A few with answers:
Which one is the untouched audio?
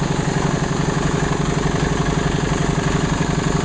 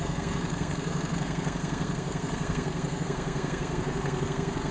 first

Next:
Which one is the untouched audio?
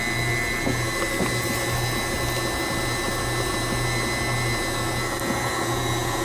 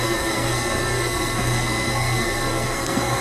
first